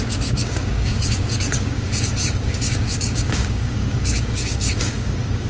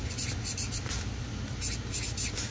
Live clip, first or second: second